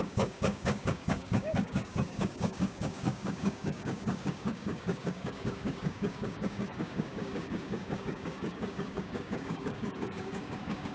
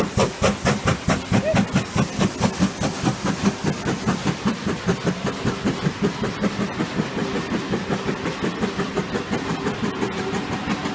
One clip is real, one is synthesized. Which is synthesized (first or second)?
first